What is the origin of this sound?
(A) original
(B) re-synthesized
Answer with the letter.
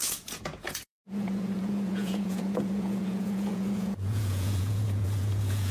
B